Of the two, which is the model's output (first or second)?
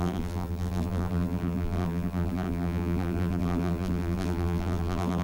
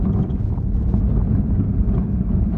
first